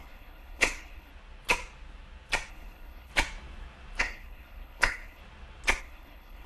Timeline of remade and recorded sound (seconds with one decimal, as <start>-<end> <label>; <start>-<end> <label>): 0.0-1.1 remade; 1.1-2.5 recorded; 2.5-3.1 remade; 3.1-4.0 recorded; 4.0-5.2 remade; 5.2-5.8 recorded; 5.8-6.5 remade